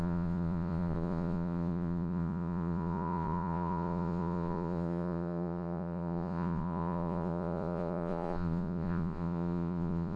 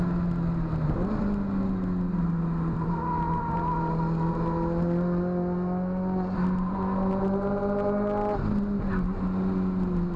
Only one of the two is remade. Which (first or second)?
first